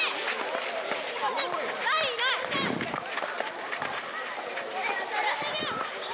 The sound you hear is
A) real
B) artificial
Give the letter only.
A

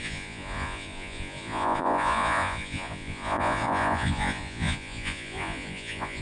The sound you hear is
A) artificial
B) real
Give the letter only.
A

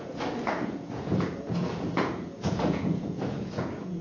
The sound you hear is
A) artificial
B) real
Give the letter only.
A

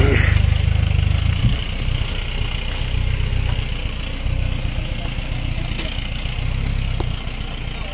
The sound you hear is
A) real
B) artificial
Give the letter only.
A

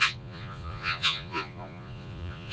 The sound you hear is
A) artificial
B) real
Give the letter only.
A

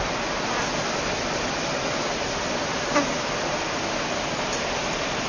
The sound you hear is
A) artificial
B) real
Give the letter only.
B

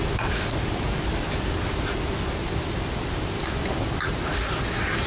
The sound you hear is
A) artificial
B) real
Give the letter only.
B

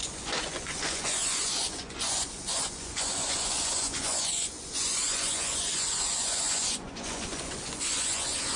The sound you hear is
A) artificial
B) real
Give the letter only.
A